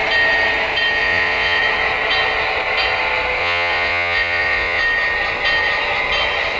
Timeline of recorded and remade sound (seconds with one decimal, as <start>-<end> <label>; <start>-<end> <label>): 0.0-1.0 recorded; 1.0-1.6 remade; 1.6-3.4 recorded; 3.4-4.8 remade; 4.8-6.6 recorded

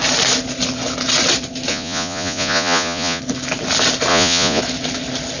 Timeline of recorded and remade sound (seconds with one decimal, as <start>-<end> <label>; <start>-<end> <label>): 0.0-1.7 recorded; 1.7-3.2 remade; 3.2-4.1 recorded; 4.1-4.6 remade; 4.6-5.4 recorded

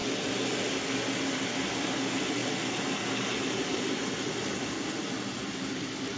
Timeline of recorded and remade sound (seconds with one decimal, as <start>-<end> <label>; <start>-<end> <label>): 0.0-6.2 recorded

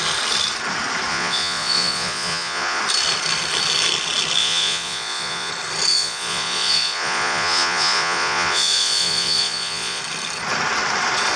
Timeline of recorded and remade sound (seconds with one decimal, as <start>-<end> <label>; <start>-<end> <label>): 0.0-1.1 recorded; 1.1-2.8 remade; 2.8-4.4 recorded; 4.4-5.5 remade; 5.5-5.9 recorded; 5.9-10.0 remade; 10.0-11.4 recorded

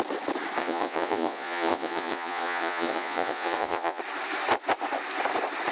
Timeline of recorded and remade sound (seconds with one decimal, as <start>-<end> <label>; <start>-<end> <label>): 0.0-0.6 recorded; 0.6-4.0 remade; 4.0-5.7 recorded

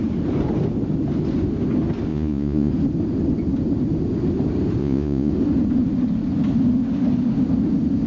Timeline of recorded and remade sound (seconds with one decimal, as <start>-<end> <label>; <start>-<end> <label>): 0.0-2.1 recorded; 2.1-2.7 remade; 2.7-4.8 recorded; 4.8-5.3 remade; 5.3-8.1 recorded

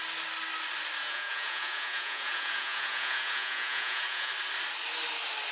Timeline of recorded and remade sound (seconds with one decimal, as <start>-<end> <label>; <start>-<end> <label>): 0.0-1.0 recorded; 1.0-4.3 remade; 4.3-5.5 recorded

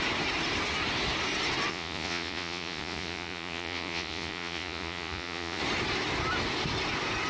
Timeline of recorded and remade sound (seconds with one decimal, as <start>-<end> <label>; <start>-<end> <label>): 0.0-1.7 recorded; 1.7-5.6 remade; 5.6-7.3 recorded